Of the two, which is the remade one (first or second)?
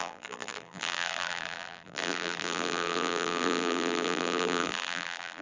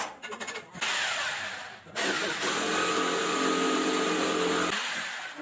first